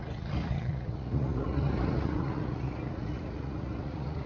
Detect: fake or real fake